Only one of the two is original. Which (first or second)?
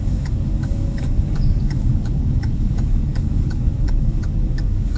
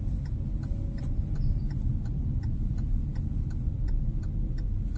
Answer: second